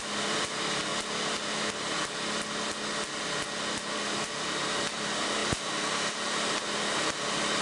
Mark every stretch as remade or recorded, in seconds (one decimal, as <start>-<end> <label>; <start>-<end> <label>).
0.0-0.9 remade; 0.9-3.9 recorded; 3.9-7.6 remade